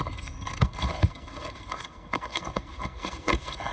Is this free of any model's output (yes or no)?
no